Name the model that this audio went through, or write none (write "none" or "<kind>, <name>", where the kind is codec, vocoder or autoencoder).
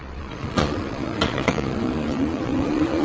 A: vocoder, Vocos